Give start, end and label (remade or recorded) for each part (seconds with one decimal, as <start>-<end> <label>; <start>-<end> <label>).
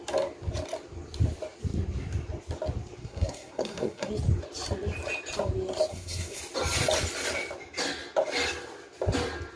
0.0-3.0 recorded; 3.0-4.1 remade; 4.1-5.9 recorded; 5.9-6.4 remade; 6.4-9.6 recorded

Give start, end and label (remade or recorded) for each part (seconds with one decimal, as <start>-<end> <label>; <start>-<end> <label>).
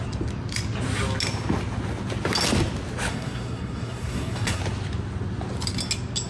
0.0-3.1 recorded; 3.1-4.6 remade; 4.6-6.3 recorded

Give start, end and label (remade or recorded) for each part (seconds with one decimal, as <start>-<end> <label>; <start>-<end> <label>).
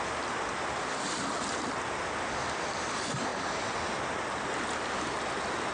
0.0-5.7 recorded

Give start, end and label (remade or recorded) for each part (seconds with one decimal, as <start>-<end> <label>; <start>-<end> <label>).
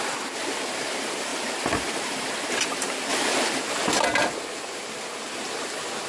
0.0-6.1 recorded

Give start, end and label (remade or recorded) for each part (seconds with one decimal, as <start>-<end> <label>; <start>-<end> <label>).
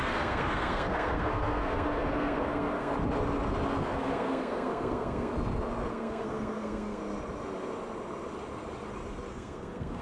0.0-2.9 remade; 2.9-3.8 recorded; 3.8-5.3 remade; 5.3-5.9 recorded; 5.9-7.0 remade; 7.0-9.3 recorded; 9.3-10.0 remade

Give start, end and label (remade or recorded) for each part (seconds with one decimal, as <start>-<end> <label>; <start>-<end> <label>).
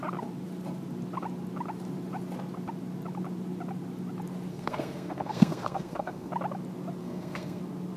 0.0-4.5 recorded; 4.5-6.3 remade; 6.3-7.0 recorded; 7.0-7.6 remade; 7.6-8.0 recorded